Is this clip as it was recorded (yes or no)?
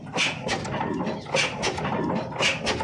yes